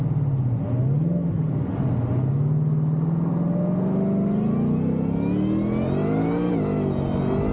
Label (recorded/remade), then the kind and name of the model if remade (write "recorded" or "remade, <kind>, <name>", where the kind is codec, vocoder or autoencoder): recorded